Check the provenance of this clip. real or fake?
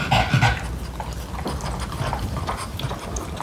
real